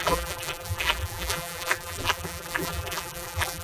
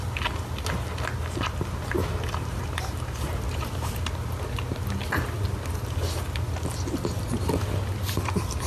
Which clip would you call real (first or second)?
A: second